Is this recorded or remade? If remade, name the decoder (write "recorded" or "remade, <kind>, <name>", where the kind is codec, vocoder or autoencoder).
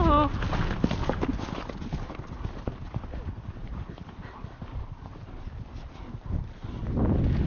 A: recorded